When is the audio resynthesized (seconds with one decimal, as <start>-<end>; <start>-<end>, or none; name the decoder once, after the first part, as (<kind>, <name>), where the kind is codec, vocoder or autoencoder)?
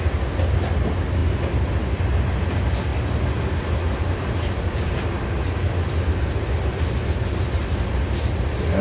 none